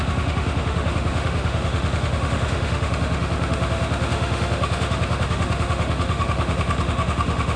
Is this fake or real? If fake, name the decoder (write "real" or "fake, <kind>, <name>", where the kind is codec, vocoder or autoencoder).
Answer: fake, autoencoder, DAC-VAE